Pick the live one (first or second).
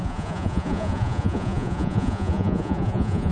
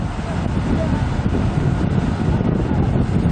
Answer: second